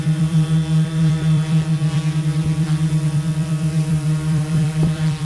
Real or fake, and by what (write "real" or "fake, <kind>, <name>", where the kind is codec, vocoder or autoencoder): fake, vocoder, BigVGAN v2